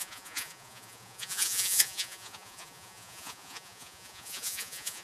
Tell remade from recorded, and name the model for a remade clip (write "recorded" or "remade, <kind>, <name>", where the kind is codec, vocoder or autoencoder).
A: remade, vocoder, Vocos